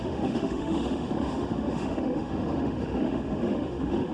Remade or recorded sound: remade